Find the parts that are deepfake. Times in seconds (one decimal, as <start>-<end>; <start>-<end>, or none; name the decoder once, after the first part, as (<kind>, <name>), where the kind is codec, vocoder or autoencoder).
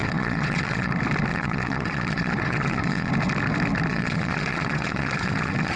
0.0-0.9 (vocoder, Vocos); 1.3-3.1; 3.9-5.8